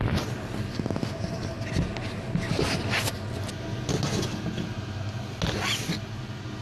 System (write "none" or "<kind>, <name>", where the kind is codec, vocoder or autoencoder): none